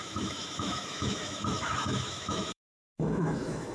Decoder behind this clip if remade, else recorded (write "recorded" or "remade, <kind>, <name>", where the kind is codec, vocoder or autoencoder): remade, autoencoder, DAC-VAE